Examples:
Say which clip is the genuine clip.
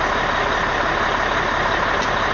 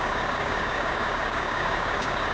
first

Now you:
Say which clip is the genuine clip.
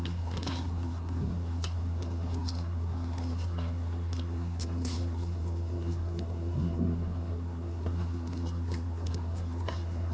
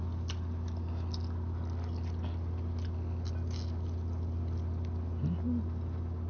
second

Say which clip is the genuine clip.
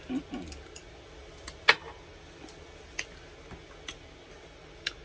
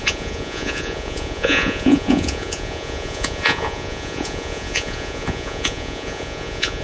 first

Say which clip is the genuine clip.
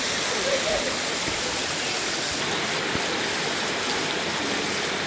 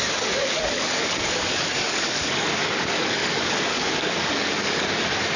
first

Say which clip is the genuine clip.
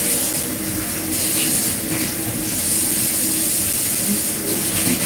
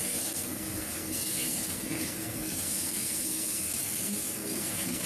first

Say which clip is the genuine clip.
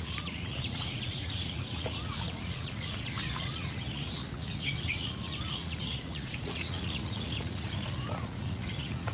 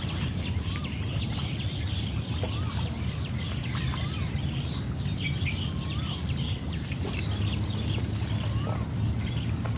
second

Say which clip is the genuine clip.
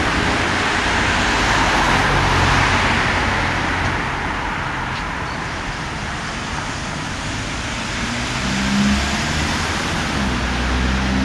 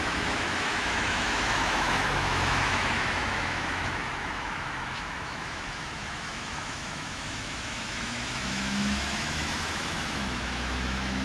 first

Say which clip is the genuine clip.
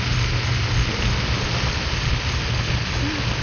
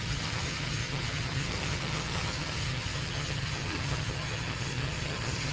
first